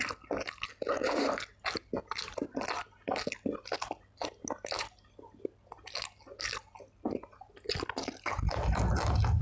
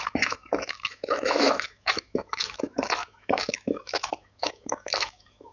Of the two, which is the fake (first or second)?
second